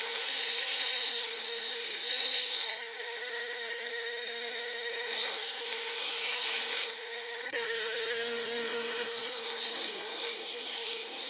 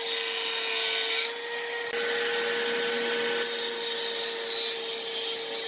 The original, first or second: second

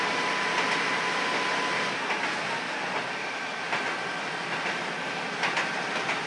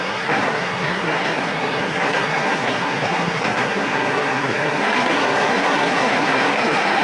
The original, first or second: first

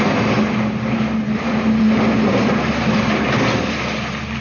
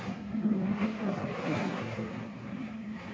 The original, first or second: first